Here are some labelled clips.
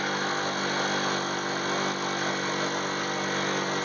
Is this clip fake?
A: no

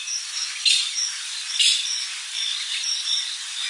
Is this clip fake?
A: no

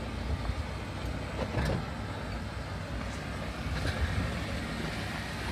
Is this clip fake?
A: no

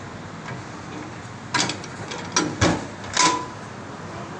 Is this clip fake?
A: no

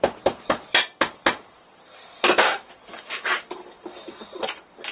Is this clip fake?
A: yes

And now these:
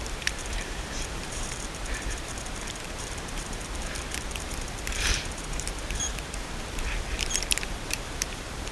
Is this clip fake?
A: yes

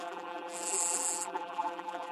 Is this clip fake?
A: yes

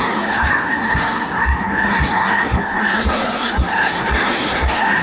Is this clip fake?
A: yes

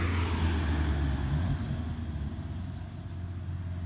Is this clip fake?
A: no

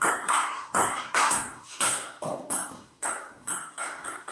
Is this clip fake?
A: yes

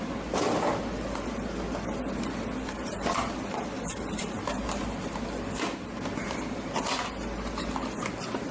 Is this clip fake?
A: no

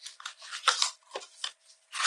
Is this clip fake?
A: yes